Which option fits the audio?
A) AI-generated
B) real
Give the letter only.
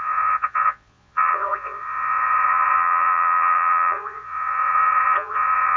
A